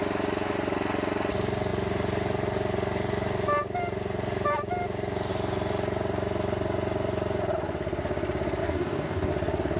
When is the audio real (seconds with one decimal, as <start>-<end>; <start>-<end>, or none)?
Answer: 0.0-8.6; 9.3-9.8